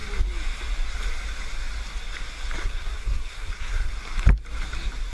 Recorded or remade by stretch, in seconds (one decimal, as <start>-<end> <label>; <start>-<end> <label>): 0.0-2.6 recorded; 2.6-3.9 remade; 3.9-5.1 recorded